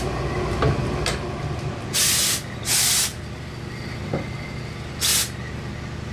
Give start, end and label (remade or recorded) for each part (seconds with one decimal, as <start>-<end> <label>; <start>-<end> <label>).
0.0-6.1 recorded